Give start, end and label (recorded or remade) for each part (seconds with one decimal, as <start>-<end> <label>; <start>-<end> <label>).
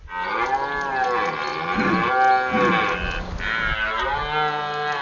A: 0.0-5.0 recorded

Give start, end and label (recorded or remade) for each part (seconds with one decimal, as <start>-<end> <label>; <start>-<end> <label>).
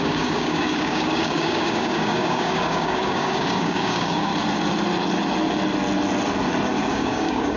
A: 0.0-4.3 remade; 4.3-6.9 recorded; 6.9-7.6 remade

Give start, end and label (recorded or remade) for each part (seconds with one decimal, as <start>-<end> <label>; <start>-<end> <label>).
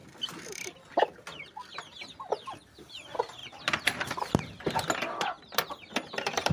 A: 0.0-6.5 recorded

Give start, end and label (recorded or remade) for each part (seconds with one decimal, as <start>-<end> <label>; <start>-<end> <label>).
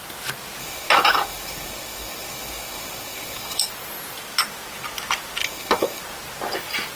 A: 0.0-0.6 recorded; 0.6-3.7 remade; 3.7-5.4 recorded; 5.4-6.0 remade; 6.0-7.0 recorded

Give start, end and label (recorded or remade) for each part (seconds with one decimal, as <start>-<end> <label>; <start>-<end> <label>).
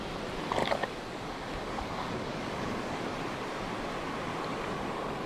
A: 0.0-0.6 recorded; 0.6-3.0 remade; 3.0-4.5 recorded; 4.5-5.3 remade